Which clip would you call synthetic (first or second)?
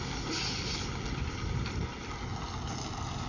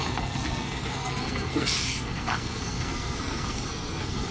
second